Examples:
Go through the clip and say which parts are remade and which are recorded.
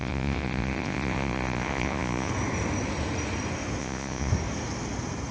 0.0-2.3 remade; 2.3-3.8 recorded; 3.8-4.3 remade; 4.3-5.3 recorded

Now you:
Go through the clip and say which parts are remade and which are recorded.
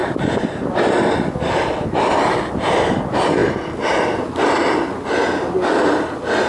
0.0-6.5 recorded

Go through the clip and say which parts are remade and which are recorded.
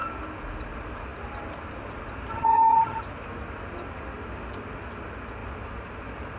0.0-2.3 recorded; 2.3-3.0 remade; 3.0-6.4 recorded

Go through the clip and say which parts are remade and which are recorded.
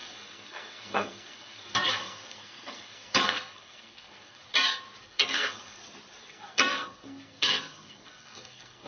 0.0-4.4 remade; 4.4-5.0 recorded; 5.0-5.8 remade; 5.8-6.3 recorded; 6.3-8.9 remade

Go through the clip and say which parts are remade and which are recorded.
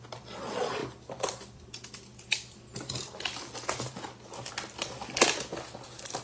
0.0-6.2 recorded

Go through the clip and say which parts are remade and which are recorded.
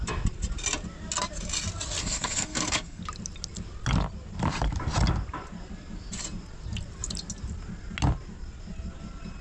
0.0-2.0 recorded; 2.0-3.0 remade; 3.0-9.4 recorded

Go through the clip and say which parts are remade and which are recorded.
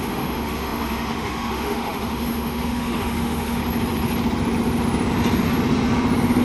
0.0-3.6 remade; 3.6-6.4 recorded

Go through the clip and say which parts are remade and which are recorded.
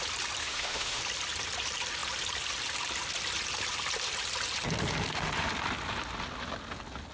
0.0-0.4 recorded; 0.4-1.0 remade; 1.0-7.1 recorded